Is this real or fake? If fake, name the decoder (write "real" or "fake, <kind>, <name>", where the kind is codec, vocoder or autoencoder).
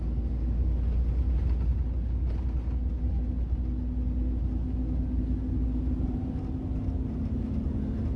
real